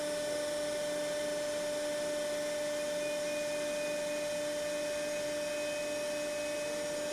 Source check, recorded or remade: recorded